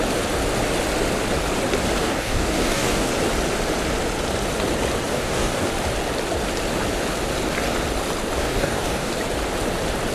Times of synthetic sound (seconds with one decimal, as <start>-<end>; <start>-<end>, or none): 2.0-3.1; 5.1-5.7; 8.4-9.1